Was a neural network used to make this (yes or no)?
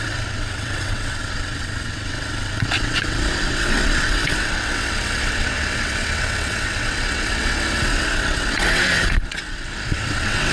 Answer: yes